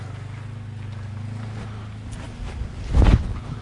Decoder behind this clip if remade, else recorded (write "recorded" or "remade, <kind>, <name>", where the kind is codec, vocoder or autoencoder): recorded